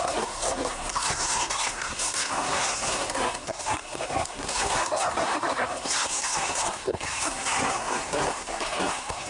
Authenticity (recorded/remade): remade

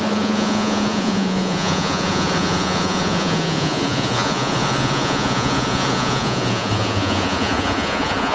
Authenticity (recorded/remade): remade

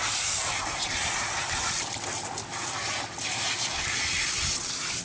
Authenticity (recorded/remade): recorded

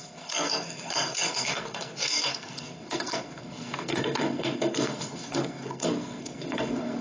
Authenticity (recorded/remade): remade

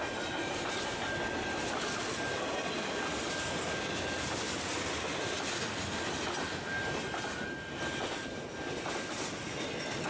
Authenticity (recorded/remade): recorded